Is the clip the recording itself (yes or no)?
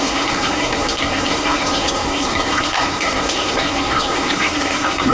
no